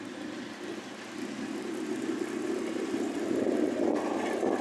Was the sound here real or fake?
real